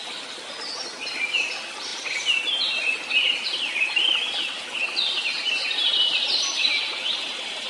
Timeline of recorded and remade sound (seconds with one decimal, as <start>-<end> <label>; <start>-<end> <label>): 0.0-7.7 recorded